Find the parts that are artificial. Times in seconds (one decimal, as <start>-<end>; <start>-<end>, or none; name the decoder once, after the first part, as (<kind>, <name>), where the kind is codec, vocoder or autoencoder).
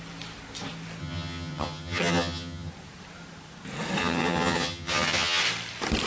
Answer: 1.0-2.7 (vocoder, HiFi-GAN); 4.0-5.4